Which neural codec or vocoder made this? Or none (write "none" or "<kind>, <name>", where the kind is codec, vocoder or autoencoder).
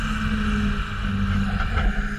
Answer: none